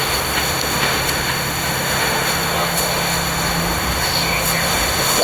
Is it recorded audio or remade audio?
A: remade